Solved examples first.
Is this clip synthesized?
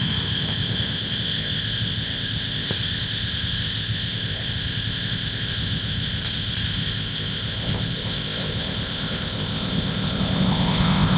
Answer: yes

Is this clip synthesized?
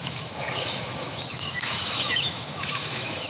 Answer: yes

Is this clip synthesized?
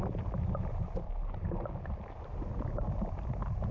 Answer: no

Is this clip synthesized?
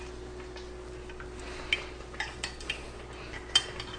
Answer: no